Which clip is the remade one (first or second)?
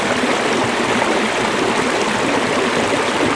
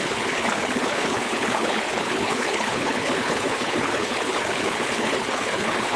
second